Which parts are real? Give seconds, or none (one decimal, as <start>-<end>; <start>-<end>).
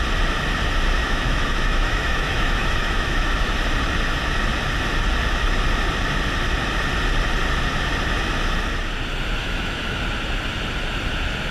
0.0-1.0; 3.5-9.4; 10.0-11.5